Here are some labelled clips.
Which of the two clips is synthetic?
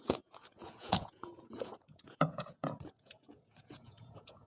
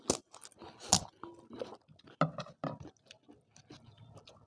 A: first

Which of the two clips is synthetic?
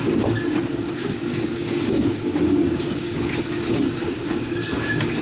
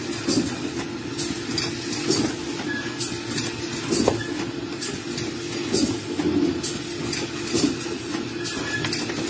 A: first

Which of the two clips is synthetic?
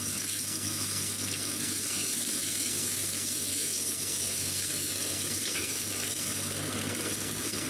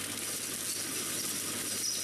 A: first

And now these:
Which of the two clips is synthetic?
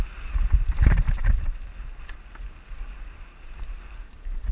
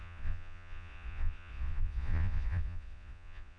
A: second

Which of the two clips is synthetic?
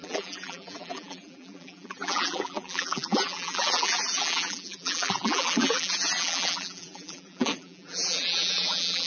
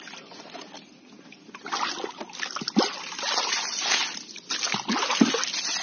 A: first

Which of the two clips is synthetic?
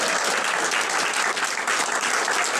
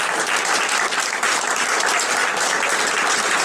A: second